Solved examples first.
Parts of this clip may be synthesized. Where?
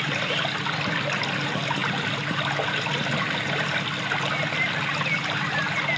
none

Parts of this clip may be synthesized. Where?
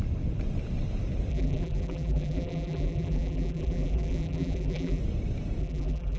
1.3-5.0 (vocoder, BigVGAN v2); 5.6-6.2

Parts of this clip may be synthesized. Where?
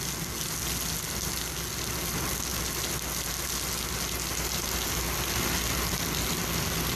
none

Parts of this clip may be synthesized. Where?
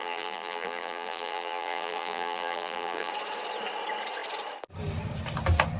0.0-3.1 (vocoder, BigVGAN v2)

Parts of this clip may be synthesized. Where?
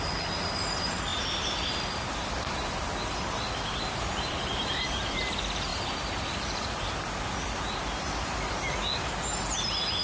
5.7-6.3 (vocoder, BigVGAN v2)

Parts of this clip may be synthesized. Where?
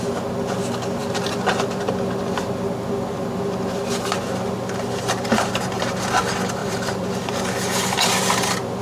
1.0-2.1 (vocoder, BigVGAN v2); 6.6-7.2